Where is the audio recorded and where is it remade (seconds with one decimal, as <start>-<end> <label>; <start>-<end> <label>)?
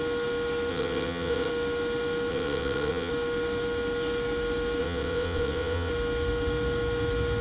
0.0-0.7 recorded; 0.7-1.5 remade; 1.5-2.3 recorded; 2.3-3.1 remade; 3.1-4.8 recorded; 4.8-5.9 remade; 5.9-7.4 recorded